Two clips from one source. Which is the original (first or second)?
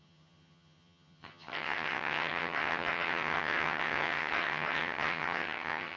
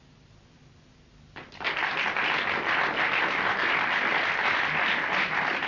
second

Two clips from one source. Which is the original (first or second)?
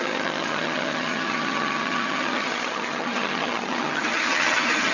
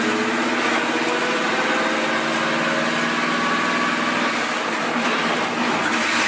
second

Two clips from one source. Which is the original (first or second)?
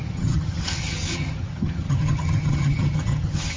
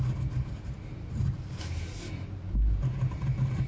second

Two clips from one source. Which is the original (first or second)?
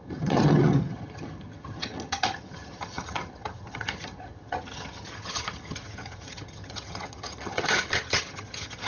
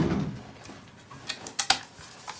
second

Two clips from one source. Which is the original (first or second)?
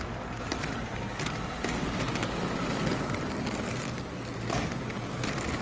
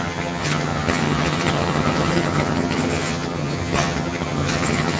first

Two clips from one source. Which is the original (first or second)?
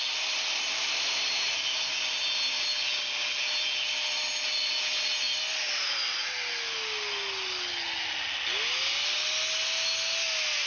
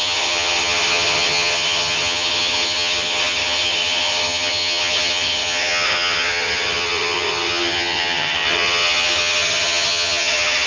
first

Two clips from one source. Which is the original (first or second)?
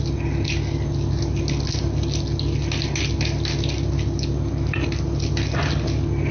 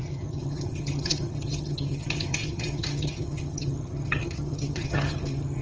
first